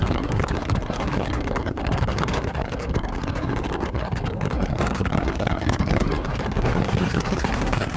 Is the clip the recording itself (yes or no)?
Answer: no